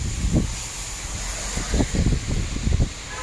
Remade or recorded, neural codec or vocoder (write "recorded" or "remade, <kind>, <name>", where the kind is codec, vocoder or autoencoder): recorded